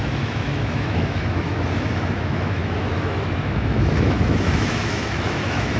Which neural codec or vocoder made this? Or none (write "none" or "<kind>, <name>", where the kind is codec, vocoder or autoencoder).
autoencoder, DAC-VAE